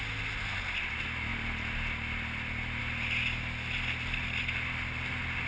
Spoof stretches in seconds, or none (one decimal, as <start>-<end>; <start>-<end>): none